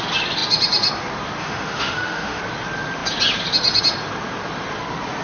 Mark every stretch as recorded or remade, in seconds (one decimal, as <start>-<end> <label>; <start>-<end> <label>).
0.0-1.4 recorded; 1.4-2.4 remade; 2.4-5.2 recorded